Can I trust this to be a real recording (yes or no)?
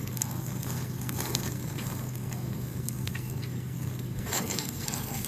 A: no